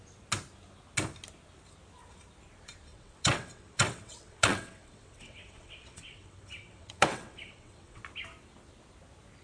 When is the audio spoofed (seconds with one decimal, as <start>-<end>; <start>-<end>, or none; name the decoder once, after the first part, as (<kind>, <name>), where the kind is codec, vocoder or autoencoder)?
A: 2.9-8.0 (vocoder, WaveNeXt)